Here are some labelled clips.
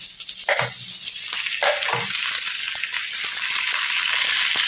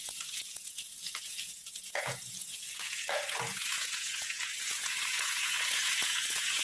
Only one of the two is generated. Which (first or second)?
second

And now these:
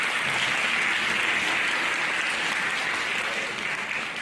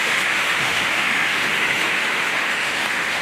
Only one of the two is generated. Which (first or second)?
second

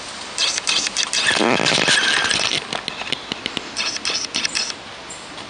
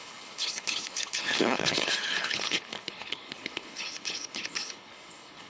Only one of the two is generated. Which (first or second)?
second